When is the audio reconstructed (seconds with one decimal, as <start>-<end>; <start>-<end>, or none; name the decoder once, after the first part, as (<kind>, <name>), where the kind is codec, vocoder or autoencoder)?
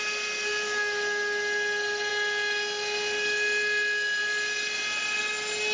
none